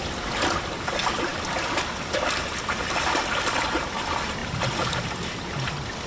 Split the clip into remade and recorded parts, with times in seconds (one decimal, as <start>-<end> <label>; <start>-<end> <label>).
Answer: 0.0-6.1 recorded